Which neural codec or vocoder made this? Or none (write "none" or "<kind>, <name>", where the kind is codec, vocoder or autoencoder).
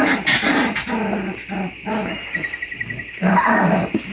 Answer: vocoder, BigVGAN v2